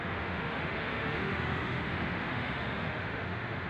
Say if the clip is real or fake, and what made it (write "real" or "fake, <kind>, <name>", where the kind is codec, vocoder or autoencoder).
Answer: fake, autoencoder, DAC-VAE